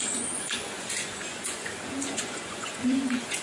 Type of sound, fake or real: fake